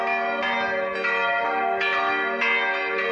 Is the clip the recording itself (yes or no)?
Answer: yes